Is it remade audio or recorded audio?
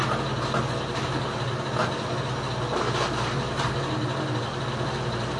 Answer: recorded